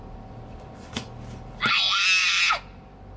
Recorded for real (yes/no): yes